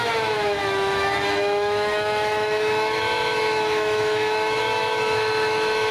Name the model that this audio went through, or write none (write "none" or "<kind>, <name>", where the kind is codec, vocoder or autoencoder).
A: autoencoder, DAC-VAE